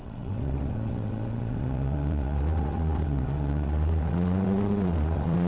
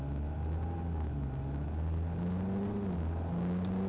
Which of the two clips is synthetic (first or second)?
first